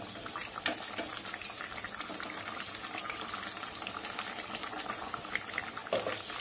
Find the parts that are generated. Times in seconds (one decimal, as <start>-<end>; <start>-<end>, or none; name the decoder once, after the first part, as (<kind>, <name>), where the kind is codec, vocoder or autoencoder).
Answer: 4.6-5.1 (vocoder, Vocos)